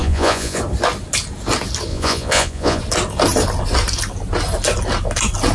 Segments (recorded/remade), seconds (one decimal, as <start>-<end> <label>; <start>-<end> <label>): 0.0-0.6 remade; 0.6-1.9 recorded; 1.9-2.8 remade; 2.8-5.5 recorded